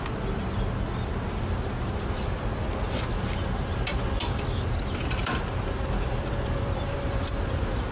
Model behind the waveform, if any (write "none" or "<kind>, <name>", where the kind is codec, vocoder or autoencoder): none